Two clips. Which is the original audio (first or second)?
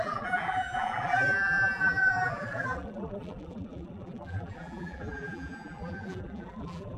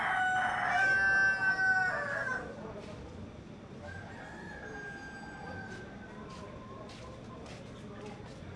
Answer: second